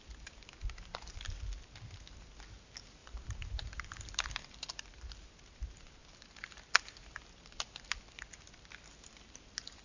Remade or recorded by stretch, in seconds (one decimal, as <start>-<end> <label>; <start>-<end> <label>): 0.0-3.0 recorded; 3.0-4.2 remade; 4.2-9.8 recorded